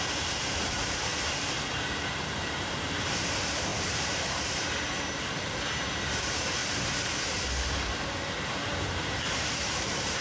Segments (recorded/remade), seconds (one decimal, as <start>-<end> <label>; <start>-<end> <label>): 0.0-1.1 remade; 1.1-1.7 recorded; 1.7-6.6 remade; 6.6-8.5 recorded; 8.5-10.2 remade